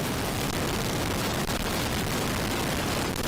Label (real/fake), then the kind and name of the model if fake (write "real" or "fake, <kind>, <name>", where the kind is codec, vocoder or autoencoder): real